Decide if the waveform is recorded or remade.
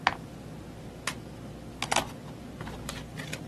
recorded